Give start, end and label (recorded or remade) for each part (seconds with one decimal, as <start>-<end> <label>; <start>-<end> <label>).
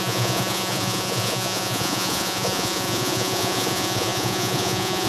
0.0-5.1 remade